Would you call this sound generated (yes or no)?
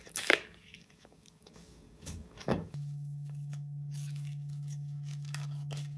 yes